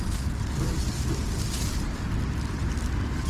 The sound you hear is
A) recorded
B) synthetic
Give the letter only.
A